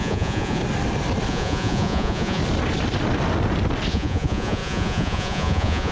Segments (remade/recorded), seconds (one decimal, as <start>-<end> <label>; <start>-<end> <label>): 0.0-0.6 remade; 0.6-1.3 recorded; 1.3-2.4 remade; 2.4-3.9 recorded; 3.9-5.9 remade